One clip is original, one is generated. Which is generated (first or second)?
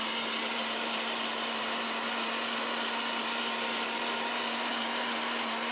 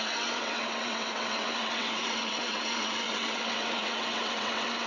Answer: second